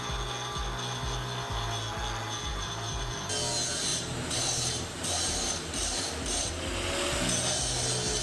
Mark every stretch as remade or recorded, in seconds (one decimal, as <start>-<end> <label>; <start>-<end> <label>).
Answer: 0.0-2.5 recorded; 2.5-3.1 remade; 3.1-3.9 recorded; 3.9-6.5 remade; 6.5-8.2 recorded